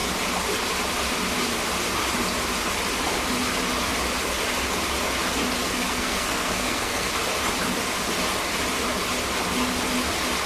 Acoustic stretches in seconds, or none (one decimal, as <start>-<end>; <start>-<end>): 0.0-5.6; 7.1-10.5